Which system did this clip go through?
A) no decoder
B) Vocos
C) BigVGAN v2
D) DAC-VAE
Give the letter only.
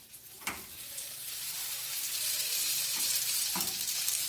C